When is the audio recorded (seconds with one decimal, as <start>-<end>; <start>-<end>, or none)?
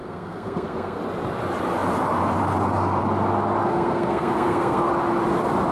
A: 1.0-3.6; 4.9-5.7